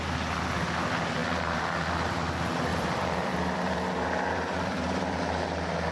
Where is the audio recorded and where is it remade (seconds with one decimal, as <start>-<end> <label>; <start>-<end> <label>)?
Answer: 0.0-1.2 recorded; 1.2-2.1 remade; 2.1-2.7 recorded; 2.7-5.2 remade; 5.2-5.9 recorded

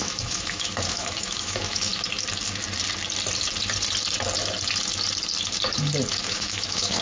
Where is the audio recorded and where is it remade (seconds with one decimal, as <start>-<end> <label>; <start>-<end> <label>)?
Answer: 0.0-1.9 remade; 1.9-6.1 recorded; 6.1-7.0 remade

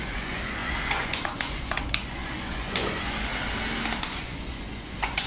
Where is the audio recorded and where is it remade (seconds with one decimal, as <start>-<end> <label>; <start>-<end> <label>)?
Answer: 0.0-3.3 remade; 3.3-4.0 recorded; 4.0-5.3 remade